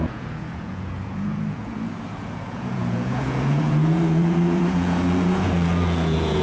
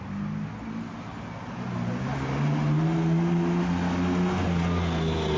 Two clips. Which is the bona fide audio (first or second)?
second